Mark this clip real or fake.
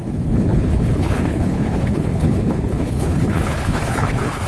fake